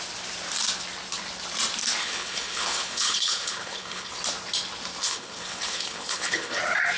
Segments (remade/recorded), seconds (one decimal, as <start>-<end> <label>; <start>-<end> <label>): 0.0-2.0 recorded; 2.0-4.1 remade; 4.1-5.0 recorded; 5.0-6.6 remade; 6.6-7.0 recorded